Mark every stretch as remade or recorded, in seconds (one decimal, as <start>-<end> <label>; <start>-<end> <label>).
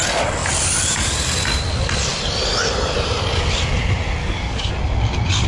0.0-4.2 recorded; 4.2-4.7 remade; 4.7-5.5 recorded